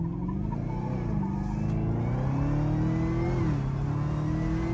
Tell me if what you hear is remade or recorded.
recorded